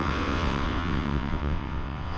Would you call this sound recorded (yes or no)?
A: no